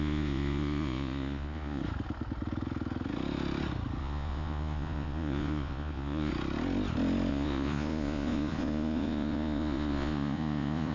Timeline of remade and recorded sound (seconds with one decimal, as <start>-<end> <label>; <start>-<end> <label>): 0.0-1.8 remade; 1.8-4.0 recorded; 4.0-6.3 remade; 6.3-7.3 recorded; 7.3-10.9 remade